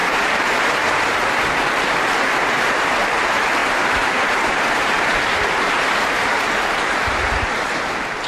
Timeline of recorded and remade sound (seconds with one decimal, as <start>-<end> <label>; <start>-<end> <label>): 0.0-1.3 remade; 1.3-3.6 recorded; 3.6-7.8 remade; 7.8-8.3 recorded